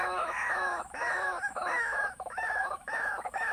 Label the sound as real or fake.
fake